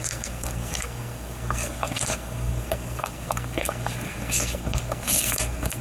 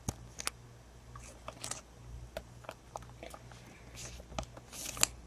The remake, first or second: first